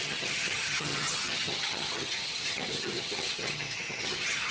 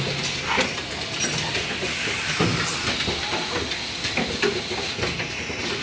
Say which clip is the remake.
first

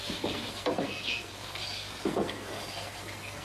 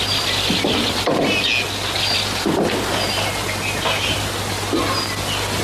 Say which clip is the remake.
first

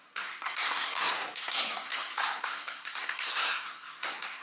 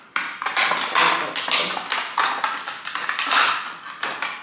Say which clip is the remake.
first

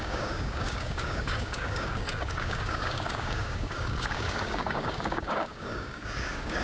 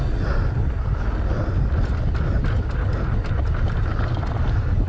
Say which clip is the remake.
first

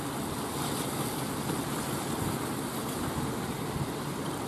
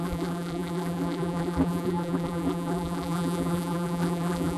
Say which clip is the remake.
second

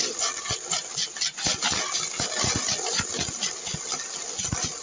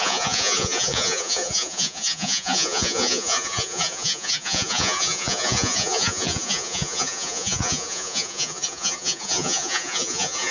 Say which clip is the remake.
second